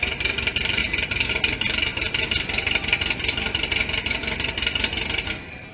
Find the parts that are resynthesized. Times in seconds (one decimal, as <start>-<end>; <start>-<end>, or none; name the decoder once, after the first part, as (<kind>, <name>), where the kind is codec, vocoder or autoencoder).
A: 0.0-0.8 (vocoder, BigVGAN v2); 1.3-1.9; 5.3-5.7

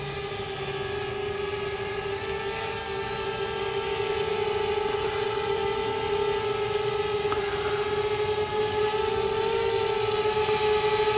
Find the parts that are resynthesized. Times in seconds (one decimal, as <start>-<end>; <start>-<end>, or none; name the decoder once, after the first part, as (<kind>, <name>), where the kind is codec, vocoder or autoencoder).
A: 2.1-3.1 (codec, DAC)

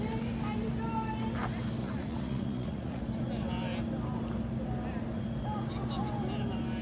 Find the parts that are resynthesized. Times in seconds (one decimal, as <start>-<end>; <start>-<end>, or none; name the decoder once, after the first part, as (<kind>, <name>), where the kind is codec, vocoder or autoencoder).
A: 1.8-3.0 (vocoder, Vocos)

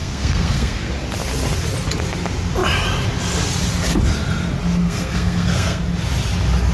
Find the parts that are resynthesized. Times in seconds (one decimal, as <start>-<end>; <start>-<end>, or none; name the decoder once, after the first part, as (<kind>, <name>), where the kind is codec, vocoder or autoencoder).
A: 0.0-0.9 (codec, SNAC); 4.8-5.8

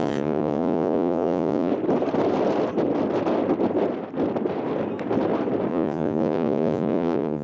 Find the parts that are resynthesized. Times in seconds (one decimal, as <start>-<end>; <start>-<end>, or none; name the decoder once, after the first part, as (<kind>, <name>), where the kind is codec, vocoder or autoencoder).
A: 0.0-1.7 (vocoder, Vocos); 5.7-7.4

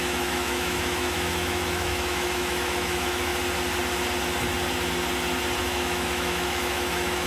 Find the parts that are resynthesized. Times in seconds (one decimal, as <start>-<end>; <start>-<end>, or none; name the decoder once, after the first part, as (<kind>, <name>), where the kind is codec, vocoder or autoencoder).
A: 0.0-3.3 (autoencoder, DAC-VAE); 5.6-7.3

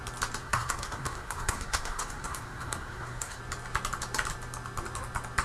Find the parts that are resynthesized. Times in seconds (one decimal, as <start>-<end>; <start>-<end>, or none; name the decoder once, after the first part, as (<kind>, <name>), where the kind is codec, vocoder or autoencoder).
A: 0.4-3.4 (codec, SNAC)

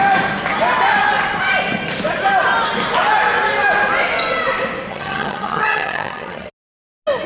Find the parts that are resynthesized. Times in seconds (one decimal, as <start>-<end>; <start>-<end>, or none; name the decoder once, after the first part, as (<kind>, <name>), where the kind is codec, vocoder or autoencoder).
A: 4.9-6.5 (vocoder, HiFi-GAN)